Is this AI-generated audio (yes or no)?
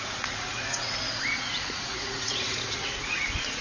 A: yes